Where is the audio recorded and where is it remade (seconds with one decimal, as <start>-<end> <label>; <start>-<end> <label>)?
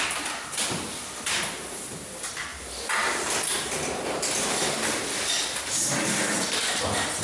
0.0-2.5 remade; 2.5-6.0 recorded; 6.0-7.2 remade